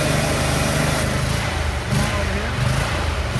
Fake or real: real